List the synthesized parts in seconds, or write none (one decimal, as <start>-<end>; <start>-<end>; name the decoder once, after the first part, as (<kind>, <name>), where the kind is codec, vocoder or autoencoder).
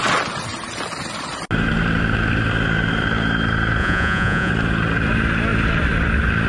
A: 3.8-4.5 (vocoder, Vocos)